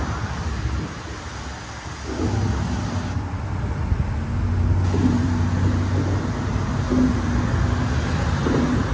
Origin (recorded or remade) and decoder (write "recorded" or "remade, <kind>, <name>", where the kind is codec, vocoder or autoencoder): recorded